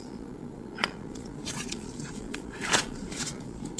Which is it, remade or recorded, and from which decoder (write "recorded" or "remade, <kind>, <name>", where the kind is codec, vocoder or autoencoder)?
remade, vocoder, Vocos